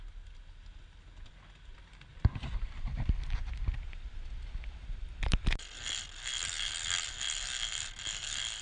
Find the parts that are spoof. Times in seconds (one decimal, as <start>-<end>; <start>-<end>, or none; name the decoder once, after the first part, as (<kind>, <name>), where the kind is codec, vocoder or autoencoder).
2.1-4.2 (vocoder, BigVGAN v2)